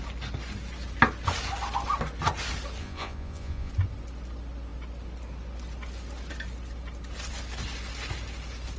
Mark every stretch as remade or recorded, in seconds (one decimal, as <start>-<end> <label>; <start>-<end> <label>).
0.0-2.8 recorded; 2.8-3.7 remade; 3.7-8.8 recorded